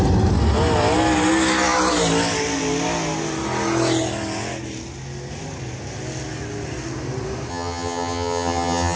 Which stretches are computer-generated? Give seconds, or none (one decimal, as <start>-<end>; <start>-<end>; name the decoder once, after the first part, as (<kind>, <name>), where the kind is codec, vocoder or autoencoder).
7.5-9.0 (vocoder, HiFi-GAN)

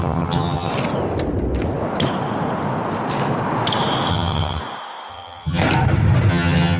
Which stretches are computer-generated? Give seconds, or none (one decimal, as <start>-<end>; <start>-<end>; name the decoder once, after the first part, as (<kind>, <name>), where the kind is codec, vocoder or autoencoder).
0.0-0.7 (vocoder, HiFi-GAN); 4.1-4.6; 5.1-5.6; 6.3-6.8

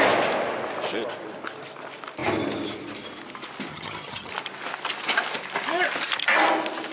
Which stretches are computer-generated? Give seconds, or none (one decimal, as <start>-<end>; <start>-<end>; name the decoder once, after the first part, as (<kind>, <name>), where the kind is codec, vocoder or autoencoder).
3.7-4.3 (vocoder, HiFi-GAN)

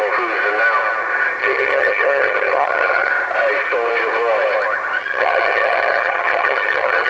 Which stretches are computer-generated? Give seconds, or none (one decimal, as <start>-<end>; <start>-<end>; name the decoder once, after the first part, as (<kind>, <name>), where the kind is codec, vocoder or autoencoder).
1.4-3.1 (vocoder, HiFi-GAN); 5.0-7.1

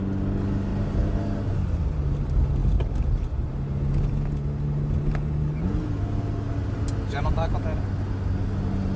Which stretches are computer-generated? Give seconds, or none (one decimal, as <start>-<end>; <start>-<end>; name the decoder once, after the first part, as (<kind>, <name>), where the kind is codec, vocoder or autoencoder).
none

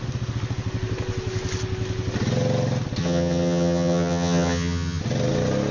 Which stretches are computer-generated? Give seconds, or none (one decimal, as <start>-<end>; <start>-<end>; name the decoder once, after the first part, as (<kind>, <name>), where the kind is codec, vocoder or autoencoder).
3.0-5.0 (vocoder, HiFi-GAN)

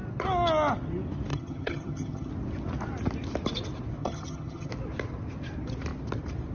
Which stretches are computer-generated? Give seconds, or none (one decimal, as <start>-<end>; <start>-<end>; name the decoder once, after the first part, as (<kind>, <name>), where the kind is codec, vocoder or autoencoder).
1.3-2.3 (vocoder, HiFi-GAN); 4.0-4.7

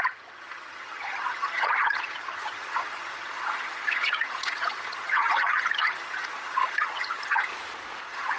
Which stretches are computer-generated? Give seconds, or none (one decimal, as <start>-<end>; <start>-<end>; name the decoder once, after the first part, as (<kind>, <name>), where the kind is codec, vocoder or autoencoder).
0.0-7.5 (vocoder, HiFi-GAN); 8.0-8.4